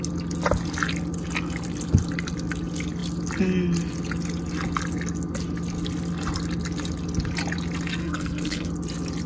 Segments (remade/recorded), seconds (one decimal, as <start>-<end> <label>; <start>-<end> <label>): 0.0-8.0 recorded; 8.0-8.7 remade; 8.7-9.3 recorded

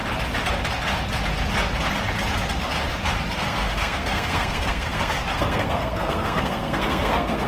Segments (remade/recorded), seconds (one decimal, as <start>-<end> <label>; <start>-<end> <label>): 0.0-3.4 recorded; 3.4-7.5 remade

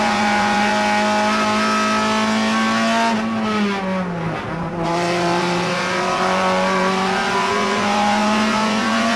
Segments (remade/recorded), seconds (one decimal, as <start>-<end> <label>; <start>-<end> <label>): 0.0-0.7 remade; 0.7-4.6 recorded; 4.6-9.2 remade

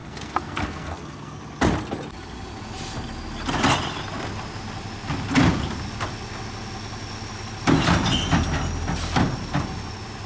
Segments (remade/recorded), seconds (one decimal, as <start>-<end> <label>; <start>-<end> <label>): 0.0-1.4 remade; 1.4-10.3 recorded

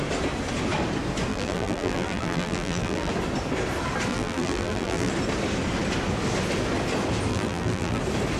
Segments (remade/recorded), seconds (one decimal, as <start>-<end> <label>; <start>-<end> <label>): 0.0-1.3 recorded; 1.3-3.1 remade; 3.1-4.1 recorded; 4.1-5.1 remade; 5.1-7.3 recorded; 7.3-8.0 remade; 8.0-8.4 recorded